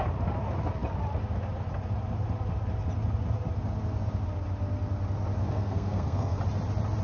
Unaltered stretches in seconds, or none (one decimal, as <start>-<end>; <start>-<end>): 0.0-5.4; 6.4-7.0